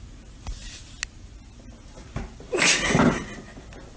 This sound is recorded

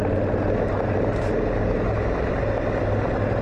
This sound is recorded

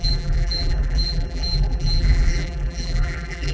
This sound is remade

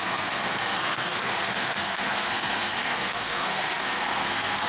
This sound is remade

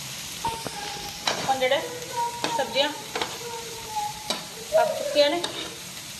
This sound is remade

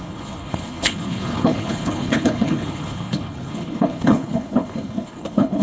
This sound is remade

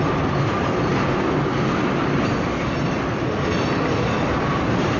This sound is recorded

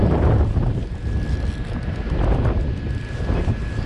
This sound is recorded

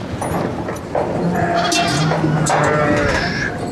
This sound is recorded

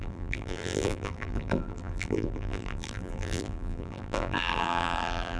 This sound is remade